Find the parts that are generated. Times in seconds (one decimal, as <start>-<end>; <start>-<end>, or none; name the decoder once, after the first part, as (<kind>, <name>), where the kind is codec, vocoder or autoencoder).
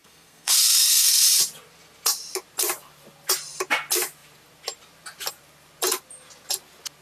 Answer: 0.0-1.2 (codec, SNAC)